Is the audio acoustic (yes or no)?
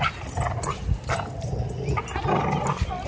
yes